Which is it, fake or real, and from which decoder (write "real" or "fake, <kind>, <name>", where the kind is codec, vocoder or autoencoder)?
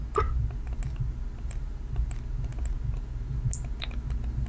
real